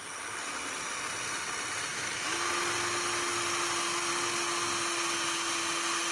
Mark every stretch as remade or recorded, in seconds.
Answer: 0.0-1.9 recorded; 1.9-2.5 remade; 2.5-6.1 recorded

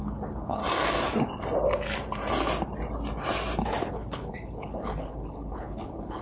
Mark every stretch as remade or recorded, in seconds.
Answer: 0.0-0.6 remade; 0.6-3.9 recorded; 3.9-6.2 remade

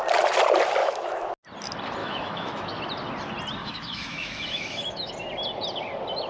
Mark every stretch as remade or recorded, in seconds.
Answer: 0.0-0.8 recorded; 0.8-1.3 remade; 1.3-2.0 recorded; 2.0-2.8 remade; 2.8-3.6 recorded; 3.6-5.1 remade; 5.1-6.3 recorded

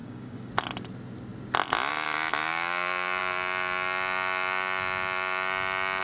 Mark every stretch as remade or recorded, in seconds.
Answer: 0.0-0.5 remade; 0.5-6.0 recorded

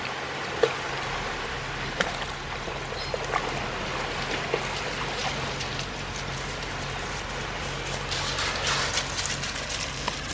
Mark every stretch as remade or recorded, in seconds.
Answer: 0.0-10.3 recorded